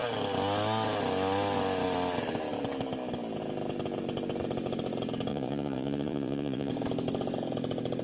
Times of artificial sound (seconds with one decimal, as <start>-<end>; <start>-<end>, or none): 5.3-6.7